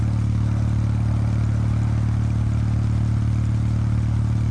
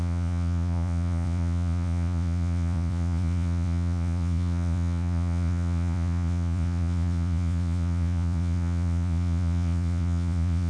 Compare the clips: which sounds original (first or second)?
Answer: first